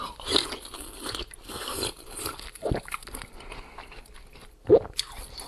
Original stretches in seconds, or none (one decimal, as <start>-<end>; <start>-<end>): 0.0-5.5